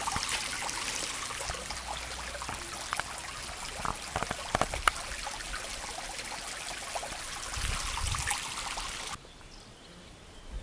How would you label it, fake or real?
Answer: real